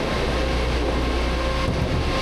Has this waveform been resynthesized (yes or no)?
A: no